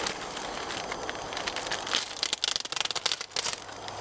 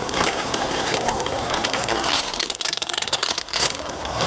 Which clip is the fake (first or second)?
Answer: second